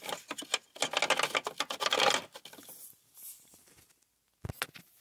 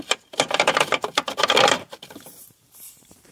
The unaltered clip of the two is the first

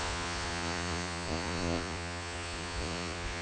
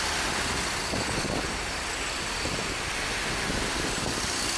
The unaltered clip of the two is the second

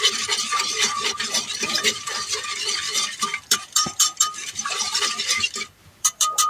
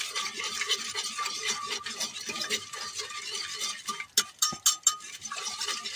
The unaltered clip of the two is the second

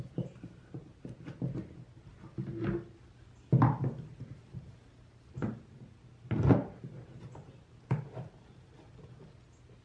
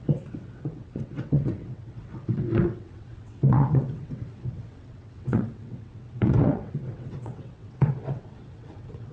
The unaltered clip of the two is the first